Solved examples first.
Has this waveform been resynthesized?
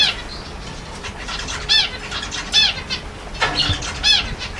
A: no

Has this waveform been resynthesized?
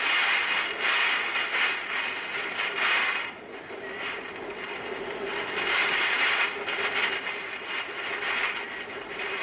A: no